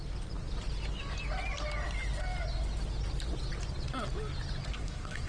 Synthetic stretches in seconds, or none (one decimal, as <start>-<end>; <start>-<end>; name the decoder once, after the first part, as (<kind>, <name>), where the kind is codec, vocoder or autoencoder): 4.7-5.3 (codec, SNAC)